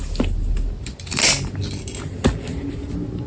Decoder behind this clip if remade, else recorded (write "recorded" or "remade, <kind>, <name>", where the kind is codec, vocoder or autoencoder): recorded